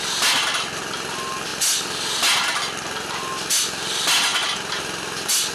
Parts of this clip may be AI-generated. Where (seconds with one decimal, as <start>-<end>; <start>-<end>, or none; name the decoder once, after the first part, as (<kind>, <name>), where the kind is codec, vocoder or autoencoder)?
none